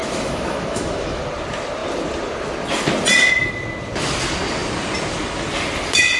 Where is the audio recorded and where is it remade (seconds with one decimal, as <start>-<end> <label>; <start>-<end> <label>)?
0.0-1.2 remade; 1.2-6.2 recorded